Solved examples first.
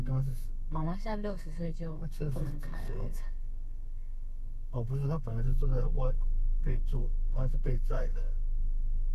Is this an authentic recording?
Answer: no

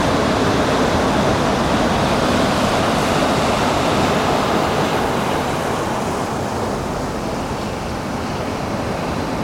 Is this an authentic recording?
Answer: yes